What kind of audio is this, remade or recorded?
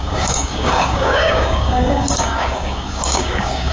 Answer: remade